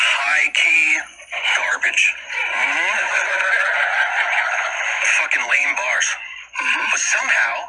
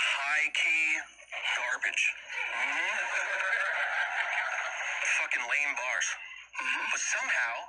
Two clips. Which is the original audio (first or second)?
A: second